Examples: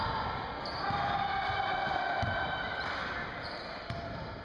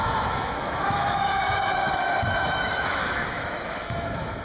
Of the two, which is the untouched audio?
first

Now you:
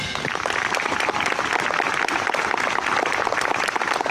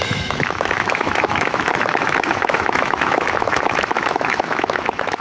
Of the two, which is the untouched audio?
first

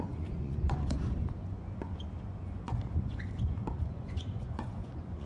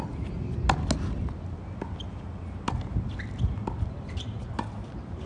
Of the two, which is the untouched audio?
second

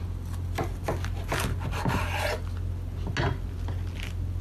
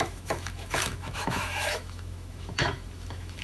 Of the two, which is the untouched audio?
first